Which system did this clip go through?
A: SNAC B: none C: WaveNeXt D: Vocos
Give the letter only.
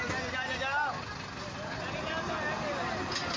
B